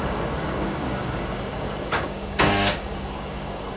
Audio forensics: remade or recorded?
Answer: remade